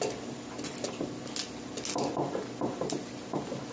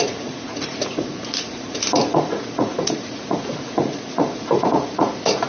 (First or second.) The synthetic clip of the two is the second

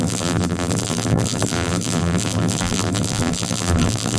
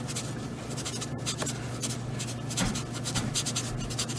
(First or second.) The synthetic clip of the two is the first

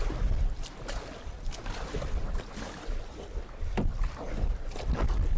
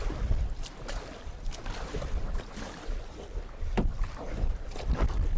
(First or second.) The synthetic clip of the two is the second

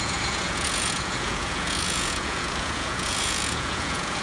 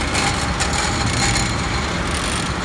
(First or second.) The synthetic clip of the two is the first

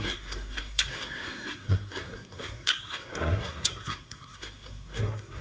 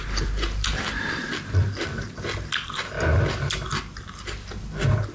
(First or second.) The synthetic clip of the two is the first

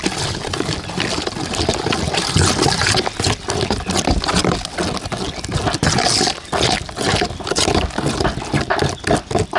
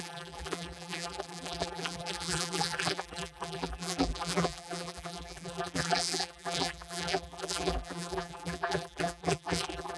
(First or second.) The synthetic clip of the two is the second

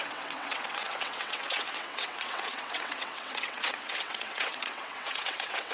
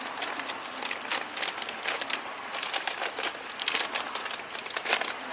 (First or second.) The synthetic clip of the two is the first